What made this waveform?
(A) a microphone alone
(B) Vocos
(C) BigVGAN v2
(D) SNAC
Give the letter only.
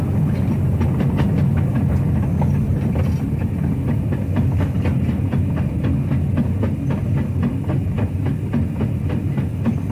A